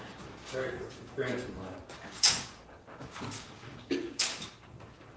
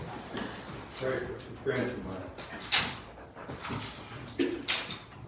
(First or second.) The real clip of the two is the second